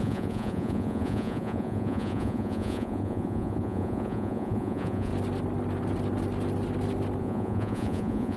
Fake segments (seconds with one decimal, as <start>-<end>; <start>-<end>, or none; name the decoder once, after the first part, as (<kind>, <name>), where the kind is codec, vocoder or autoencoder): 0.0-5.1 (vocoder, Vocos); 7.2-8.4